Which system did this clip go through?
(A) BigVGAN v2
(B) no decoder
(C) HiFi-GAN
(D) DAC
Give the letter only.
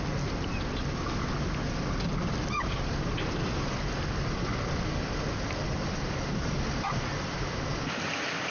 B